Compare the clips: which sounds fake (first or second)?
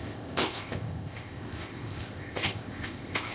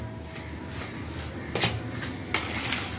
first